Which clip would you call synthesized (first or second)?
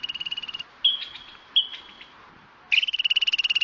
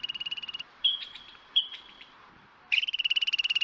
second